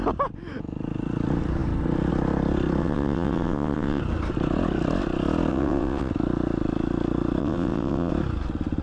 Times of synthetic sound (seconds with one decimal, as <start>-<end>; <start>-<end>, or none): 2.8-4.0; 5.5-6.1; 7.4-8.1